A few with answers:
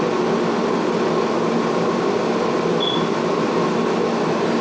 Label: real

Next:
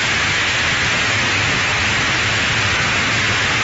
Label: real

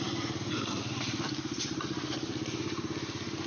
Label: real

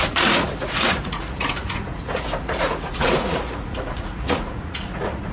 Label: fake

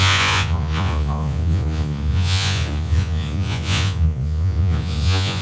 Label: fake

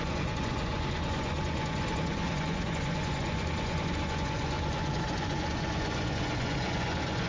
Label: fake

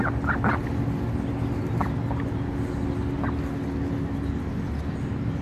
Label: real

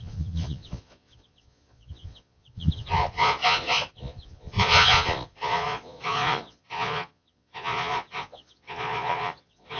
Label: fake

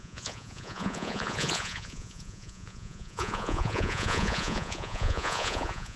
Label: fake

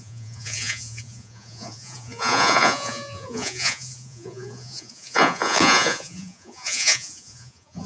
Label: fake